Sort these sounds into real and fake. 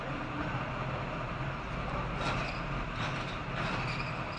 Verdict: real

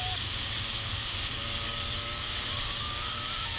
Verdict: fake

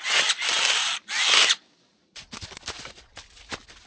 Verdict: real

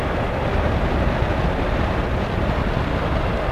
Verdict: real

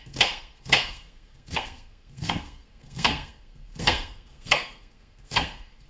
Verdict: fake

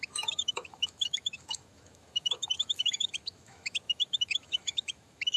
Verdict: fake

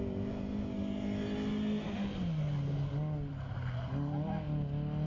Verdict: real